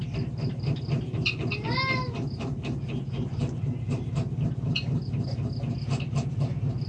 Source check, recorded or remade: recorded